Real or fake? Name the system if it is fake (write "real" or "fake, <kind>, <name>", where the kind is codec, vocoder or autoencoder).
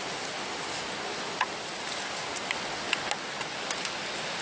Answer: real